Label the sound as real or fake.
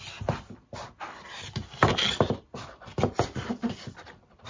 fake